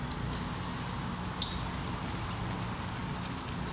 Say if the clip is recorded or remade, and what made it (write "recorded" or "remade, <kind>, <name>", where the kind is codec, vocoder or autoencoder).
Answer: recorded